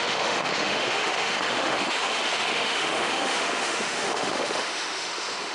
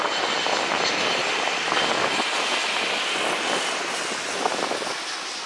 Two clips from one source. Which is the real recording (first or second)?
second